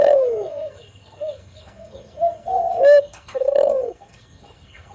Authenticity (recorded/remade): remade